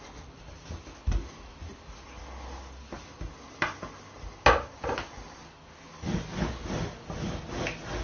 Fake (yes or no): no